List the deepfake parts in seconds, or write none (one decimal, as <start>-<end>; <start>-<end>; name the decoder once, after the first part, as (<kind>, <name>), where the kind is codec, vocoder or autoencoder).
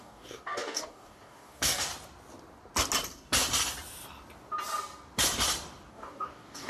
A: 0.0-1.9 (codec, DAC); 5.9-6.7